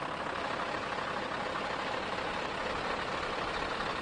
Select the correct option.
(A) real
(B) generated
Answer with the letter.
A